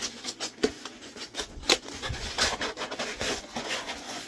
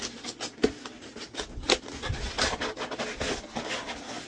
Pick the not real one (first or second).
first